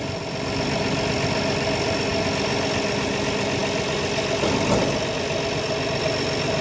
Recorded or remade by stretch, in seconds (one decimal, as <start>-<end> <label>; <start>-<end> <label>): 0.0-6.6 recorded